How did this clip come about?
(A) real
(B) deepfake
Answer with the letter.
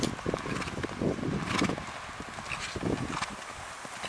A